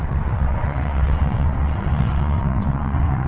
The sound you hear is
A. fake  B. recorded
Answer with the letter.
A